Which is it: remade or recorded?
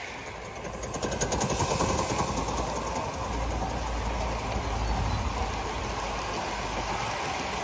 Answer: recorded